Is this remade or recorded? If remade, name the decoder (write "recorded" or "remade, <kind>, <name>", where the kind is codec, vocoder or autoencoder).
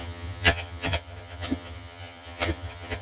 remade, vocoder, HiFi-GAN